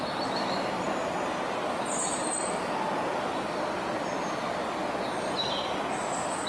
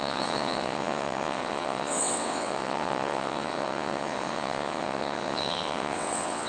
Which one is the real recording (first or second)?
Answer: first